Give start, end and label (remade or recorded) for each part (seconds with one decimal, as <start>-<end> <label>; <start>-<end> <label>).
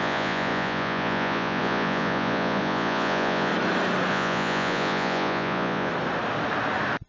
0.0-3.5 remade; 3.5-4.1 recorded; 4.1-5.9 remade; 5.9-7.1 recorded